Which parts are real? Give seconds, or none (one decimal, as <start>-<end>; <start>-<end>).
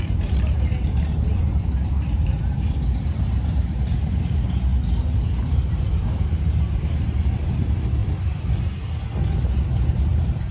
4.7-5.7; 8.0-9.9